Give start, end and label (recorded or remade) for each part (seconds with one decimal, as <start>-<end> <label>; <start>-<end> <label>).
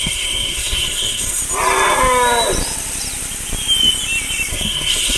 0.0-1.4 remade; 1.4-4.5 recorded; 4.5-5.2 remade